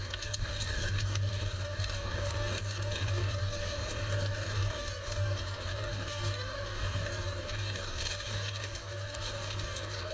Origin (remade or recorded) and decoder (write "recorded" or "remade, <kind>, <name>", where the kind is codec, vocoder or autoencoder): remade, codec, DAC